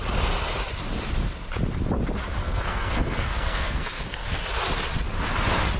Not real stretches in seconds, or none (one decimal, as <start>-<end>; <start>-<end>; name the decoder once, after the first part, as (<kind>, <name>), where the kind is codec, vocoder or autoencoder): 2.4-4.4 (codec, SNAC)